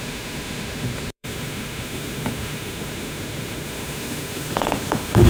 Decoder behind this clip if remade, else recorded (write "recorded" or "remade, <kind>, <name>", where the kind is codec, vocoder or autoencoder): remade, autoencoder, DAC-VAE